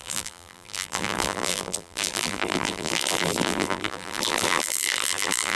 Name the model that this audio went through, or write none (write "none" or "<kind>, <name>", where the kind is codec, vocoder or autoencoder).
vocoder, BigVGAN v2